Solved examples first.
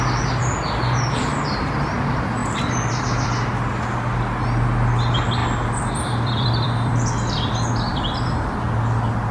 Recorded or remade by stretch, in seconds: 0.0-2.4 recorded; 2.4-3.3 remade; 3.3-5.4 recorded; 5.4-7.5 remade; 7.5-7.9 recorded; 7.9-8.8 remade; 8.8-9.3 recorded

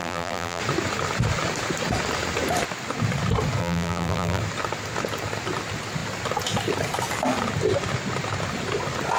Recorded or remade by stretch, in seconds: 0.0-0.6 remade; 0.6-3.6 recorded; 3.6-4.4 remade; 4.4-9.2 recorded

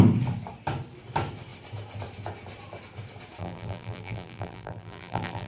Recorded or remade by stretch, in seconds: 0.0-3.4 recorded; 3.4-5.5 remade